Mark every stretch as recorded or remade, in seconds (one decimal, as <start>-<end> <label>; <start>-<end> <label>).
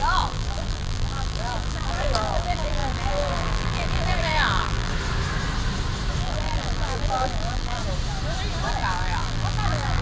0.0-4.9 remade; 4.9-6.2 recorded; 6.2-7.8 remade; 7.8-8.7 recorded; 8.7-10.0 remade